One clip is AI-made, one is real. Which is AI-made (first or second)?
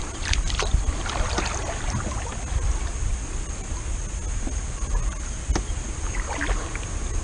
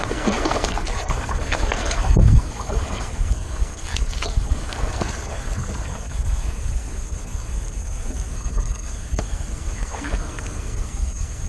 second